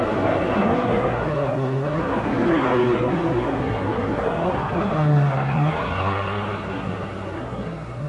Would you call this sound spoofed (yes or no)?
yes